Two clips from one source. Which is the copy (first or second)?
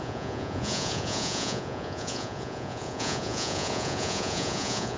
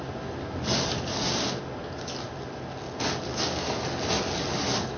first